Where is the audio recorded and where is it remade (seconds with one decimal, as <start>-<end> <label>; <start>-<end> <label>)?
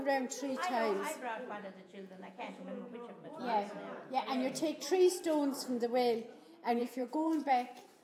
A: 0.0-1.6 recorded; 1.6-2.8 remade; 2.8-6.8 recorded; 6.8-7.5 remade; 7.5-8.0 recorded